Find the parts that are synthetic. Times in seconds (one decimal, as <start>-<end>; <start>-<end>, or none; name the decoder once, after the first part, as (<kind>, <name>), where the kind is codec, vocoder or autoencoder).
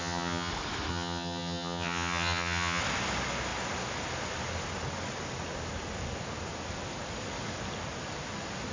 0.0-0.5 (vocoder, HiFi-GAN); 0.9-2.8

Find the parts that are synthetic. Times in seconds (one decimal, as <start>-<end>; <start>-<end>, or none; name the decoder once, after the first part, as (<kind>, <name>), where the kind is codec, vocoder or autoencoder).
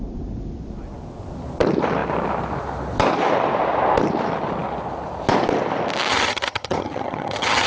6.1-7.7 (vocoder, HiFi-GAN)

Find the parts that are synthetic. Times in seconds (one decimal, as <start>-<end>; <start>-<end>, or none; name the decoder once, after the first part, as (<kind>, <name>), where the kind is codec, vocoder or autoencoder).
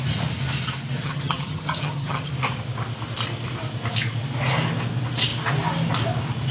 1.0-2.3 (vocoder, HiFi-GAN)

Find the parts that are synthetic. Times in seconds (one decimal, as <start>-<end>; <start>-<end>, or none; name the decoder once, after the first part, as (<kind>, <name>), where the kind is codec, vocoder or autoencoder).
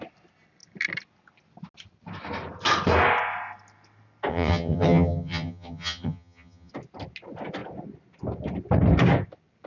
4.3-6.7 (vocoder, HiFi-GAN)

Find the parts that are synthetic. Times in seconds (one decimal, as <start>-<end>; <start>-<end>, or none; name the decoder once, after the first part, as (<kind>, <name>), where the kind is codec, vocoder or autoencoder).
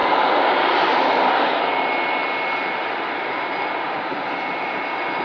none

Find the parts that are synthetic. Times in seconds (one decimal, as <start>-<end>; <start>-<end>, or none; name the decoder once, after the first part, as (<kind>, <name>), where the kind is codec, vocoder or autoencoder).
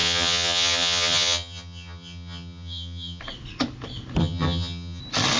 0.0-3.2 (vocoder, HiFi-GAN); 4.2-5.0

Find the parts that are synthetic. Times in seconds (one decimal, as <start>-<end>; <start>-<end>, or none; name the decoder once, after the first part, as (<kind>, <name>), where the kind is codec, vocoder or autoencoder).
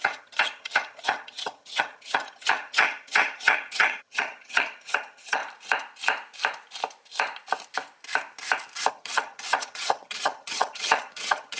0.0-5.4 (vocoder, HiFi-GAN); 8.9-11.6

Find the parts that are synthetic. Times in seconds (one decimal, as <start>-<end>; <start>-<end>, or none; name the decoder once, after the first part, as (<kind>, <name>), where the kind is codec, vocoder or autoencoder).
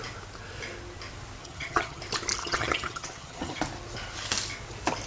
1.4-2.0 (vocoder, HiFi-GAN); 2.4-3.6